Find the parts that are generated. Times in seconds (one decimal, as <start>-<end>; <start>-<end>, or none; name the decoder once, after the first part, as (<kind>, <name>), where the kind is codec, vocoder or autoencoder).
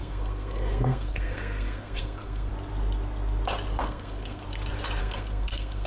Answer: 0.0-2.5 (codec, SNAC); 3.8-4.4; 5.0-5.9